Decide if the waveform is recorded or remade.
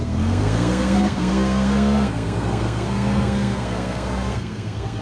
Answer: remade